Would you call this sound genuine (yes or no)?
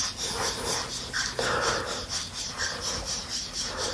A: yes